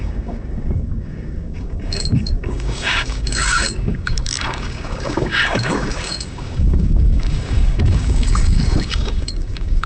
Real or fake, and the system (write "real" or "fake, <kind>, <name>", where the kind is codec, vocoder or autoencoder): fake, codec, DAC